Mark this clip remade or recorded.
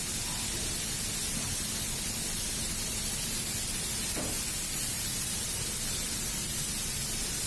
recorded